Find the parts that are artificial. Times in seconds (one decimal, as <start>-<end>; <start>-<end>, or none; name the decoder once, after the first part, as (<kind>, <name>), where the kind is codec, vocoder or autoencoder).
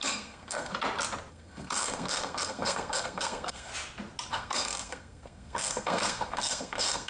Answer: 0.0-0.7 (codec, SNAC); 1.3-3.7; 4.3-7.1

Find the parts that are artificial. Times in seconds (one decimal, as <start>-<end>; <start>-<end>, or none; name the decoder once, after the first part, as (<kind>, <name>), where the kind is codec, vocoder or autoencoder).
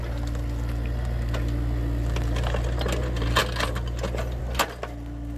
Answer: none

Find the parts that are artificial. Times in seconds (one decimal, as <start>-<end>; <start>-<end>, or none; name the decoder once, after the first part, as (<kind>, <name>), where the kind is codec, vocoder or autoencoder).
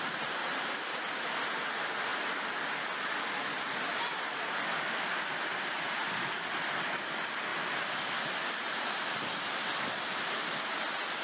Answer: 7.5-10.2 (vocoder, BigVGAN v2)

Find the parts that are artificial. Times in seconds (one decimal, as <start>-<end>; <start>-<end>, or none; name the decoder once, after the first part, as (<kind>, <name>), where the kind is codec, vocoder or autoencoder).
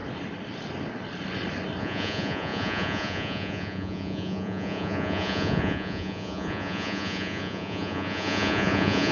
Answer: 1.8-9.1 (vocoder, Vocos)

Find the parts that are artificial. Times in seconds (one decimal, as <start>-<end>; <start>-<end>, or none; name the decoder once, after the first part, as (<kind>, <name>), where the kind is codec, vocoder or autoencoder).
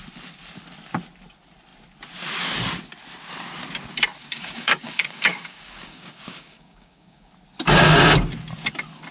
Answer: 4.3-7.3 (codec, DAC)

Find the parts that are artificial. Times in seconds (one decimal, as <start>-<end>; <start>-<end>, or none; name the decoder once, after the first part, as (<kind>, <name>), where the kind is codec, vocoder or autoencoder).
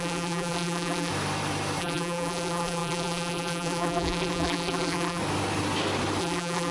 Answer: 0.0-1.1 (vocoder, BigVGAN v2); 1.8-5.2; 6.2-6.7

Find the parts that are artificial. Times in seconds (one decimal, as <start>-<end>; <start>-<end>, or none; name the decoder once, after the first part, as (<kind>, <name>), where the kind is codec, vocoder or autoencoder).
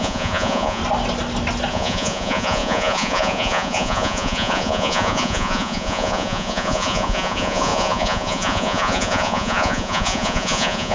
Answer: 0.0-0.8 (vocoder, Vocos); 1.7-10.9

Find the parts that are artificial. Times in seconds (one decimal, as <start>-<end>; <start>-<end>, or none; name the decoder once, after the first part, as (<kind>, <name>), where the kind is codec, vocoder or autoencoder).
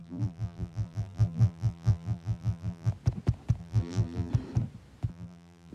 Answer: 0.0-2.9 (vocoder, BigVGAN v2); 3.6-4.3; 5.1-5.7